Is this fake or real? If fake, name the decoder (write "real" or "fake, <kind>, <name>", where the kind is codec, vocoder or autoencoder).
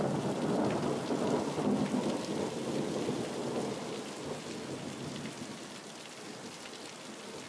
real